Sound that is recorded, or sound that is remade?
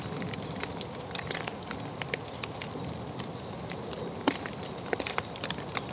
recorded